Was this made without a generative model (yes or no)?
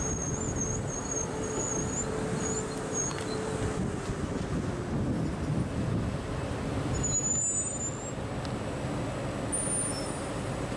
yes